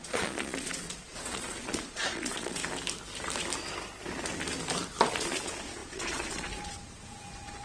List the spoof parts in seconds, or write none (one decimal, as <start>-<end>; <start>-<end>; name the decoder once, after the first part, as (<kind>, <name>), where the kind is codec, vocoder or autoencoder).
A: 0.0-2.6 (vocoder, Vocos); 5.1-7.6